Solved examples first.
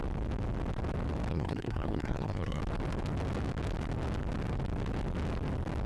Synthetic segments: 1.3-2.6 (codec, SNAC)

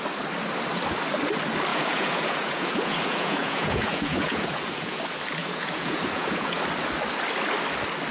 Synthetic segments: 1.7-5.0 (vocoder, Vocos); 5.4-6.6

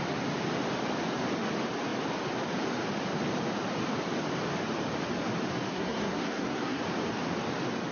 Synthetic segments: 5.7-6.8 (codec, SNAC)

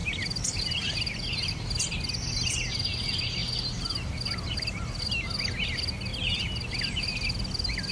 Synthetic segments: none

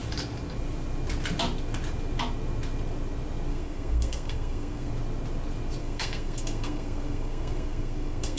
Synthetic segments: 3.5-4.9 (codec, SNAC); 5.8-8.4

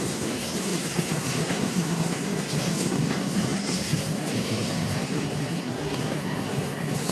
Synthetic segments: 0.0-7.1 (codec, SNAC)